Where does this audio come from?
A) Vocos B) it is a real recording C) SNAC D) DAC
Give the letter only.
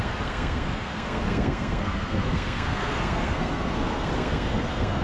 C